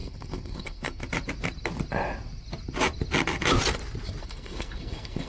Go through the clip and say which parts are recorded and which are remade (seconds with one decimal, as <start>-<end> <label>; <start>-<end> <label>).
0.0-1.0 remade; 1.0-4.2 recorded; 4.2-5.3 remade